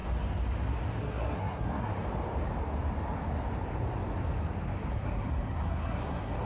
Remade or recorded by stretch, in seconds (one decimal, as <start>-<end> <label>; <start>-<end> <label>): 0.0-1.0 recorded; 1.0-1.9 remade; 1.9-4.9 recorded; 4.9-6.5 remade